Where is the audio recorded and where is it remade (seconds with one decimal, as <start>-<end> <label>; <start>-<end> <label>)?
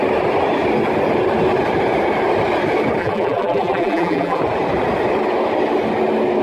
0.0-3.0 recorded; 3.0-4.4 remade; 4.4-6.4 recorded